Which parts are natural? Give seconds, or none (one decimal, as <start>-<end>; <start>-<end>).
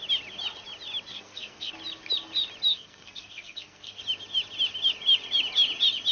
0.0-1.1; 1.7-2.7; 4.0-6.1